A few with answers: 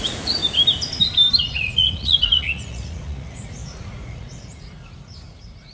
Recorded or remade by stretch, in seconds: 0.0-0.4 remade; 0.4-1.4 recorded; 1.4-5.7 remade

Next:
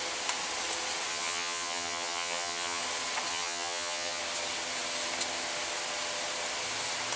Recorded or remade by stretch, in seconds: 0.0-1.1 recorded; 1.1-2.8 remade; 2.8-3.3 recorded; 3.3-4.2 remade; 4.2-7.2 recorded

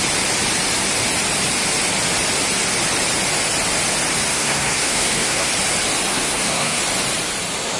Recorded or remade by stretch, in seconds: 0.0-4.3 recorded; 4.3-5.5 remade; 5.5-6.1 recorded; 6.1-6.8 remade; 6.8-7.8 recorded

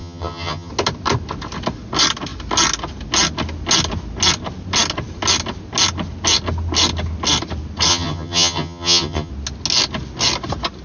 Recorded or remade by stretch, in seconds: 0.0-0.7 remade; 0.7-7.9 recorded; 7.9-9.3 remade; 9.3-10.8 recorded

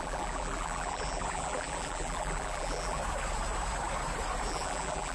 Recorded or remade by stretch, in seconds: 0.0-3.0 remade; 3.0-4.5 recorded; 4.5-5.1 remade

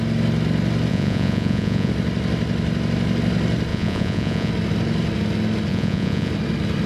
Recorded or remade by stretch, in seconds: 0.0-0.9 recorded; 0.9-1.9 remade; 1.9-3.7 recorded; 3.7-4.5 remade; 4.5-5.7 recorded; 5.7-6.3 remade; 6.3-6.9 recorded